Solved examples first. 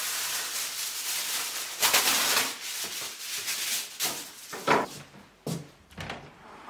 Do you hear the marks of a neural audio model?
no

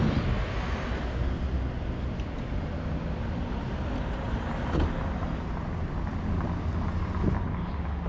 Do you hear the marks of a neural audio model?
no